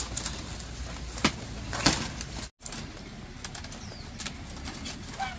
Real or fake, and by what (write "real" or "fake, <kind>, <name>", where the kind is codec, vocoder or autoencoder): real